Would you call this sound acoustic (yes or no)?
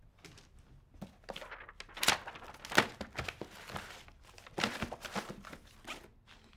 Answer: yes